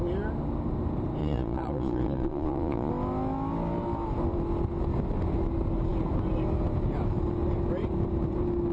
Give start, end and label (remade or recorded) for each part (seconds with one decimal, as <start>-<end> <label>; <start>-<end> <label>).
0.0-1.2 recorded; 1.2-2.9 remade; 2.9-8.7 recorded